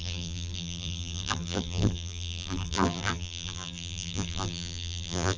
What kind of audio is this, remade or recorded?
remade